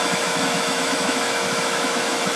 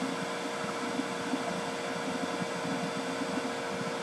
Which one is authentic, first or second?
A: second